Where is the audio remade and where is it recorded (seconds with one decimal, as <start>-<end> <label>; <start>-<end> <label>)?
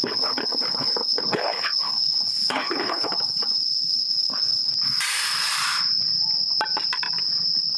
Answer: 0.0-4.7 remade; 4.7-7.8 recorded